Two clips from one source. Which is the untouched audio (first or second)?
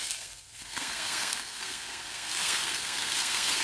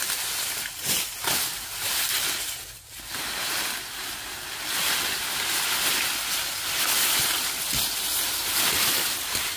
second